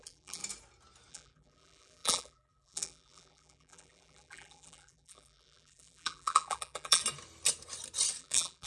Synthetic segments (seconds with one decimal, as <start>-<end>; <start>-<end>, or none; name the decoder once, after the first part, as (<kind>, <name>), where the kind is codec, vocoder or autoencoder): 0.0-0.4 (vocoder, BigVGAN v2); 1.1-7.0; 8.2-8.7